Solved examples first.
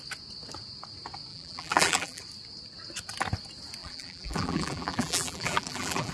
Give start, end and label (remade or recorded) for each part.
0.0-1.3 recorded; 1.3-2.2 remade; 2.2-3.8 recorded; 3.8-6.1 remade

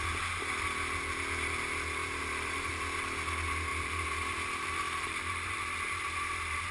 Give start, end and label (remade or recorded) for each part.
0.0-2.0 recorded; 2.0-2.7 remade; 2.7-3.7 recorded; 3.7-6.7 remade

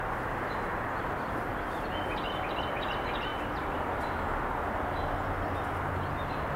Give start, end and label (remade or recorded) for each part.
0.0-3.3 recorded; 3.3-3.9 remade; 3.9-6.6 recorded

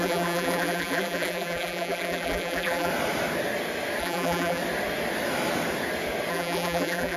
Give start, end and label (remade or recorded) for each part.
0.0-2.9 remade; 2.9-4.0 recorded; 4.0-4.6 remade; 4.6-6.3 recorded; 6.3-7.2 remade